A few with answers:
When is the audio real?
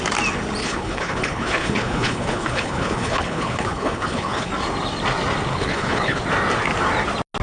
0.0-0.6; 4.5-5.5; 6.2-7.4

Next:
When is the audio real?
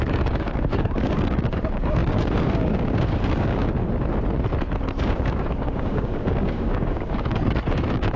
3.8-5.0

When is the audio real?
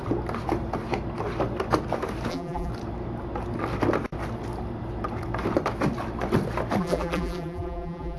0.0-2.3; 2.7-6.8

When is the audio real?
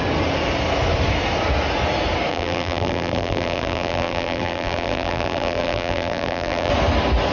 0.0-2.3; 6.7-7.3